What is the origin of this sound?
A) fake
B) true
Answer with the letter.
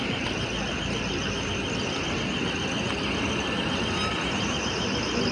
B